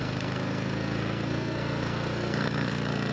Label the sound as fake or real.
fake